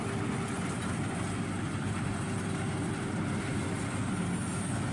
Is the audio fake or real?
real